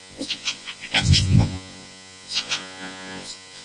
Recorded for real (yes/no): no